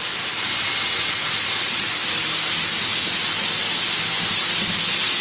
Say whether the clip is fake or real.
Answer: real